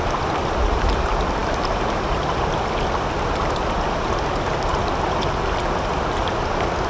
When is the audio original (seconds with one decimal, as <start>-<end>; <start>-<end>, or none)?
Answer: 0.0-6.9